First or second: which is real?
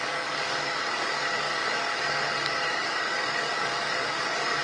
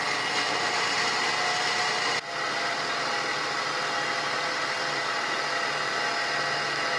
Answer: second